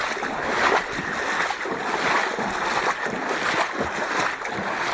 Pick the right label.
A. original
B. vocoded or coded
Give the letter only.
A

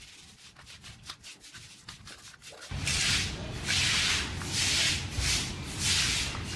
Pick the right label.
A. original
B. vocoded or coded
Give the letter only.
A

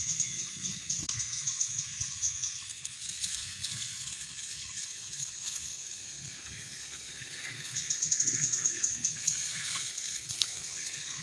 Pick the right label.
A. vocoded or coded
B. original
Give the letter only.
A